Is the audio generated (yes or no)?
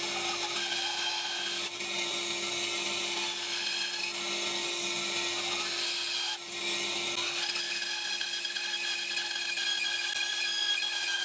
no